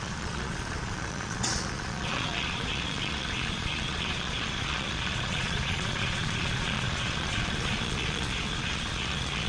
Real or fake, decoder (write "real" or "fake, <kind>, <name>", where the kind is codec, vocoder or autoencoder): fake, vocoder, Vocos